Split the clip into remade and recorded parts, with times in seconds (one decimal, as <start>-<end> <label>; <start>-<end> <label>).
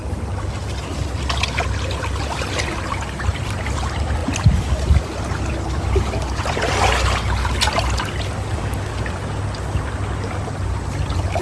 0.0-11.4 recorded